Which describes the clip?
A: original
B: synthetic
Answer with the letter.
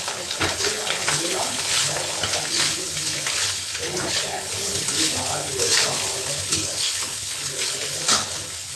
B